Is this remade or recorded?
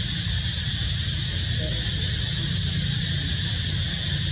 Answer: recorded